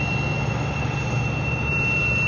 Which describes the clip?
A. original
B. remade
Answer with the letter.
A